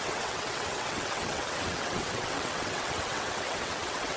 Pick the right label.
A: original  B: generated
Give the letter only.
B